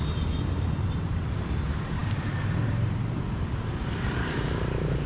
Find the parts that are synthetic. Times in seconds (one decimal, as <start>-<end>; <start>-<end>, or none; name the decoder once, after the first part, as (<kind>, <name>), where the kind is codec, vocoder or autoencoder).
0.0-5.1 (vocoder, BigVGAN v2)